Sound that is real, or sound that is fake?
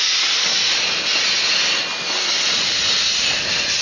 real